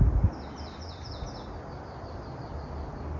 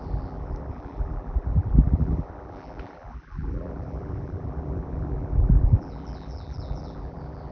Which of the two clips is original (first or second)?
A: first